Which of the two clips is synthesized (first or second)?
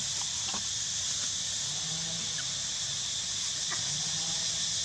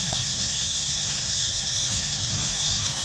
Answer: second